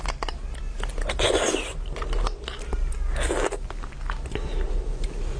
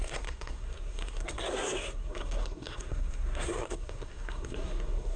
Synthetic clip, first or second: second